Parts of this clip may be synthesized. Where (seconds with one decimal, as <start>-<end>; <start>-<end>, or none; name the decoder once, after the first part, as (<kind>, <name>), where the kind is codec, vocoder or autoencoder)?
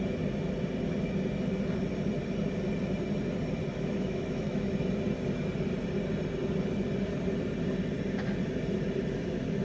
3.7-4.7 (autoencoder, DAC-VAE)